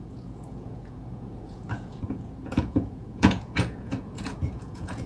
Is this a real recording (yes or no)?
no